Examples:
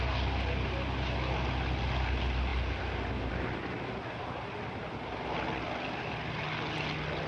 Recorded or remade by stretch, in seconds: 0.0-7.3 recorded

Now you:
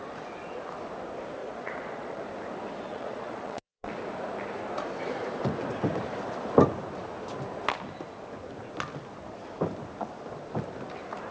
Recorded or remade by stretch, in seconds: 0.0-1.4 recorded; 1.4-2.2 remade; 2.2-2.9 recorded; 2.9-3.9 remade; 3.9-11.3 recorded

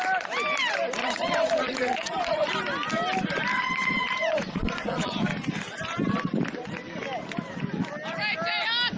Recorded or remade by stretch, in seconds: 0.0-1.0 recorded; 1.0-2.5 remade; 2.5-3.5 recorded; 3.5-5.2 remade; 5.2-9.0 recorded